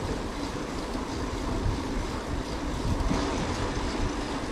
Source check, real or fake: real